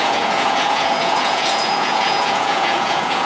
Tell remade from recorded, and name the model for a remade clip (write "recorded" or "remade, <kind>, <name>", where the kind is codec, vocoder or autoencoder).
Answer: remade, vocoder, Vocos